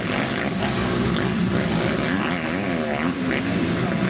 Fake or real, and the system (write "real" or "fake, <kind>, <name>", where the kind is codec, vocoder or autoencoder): real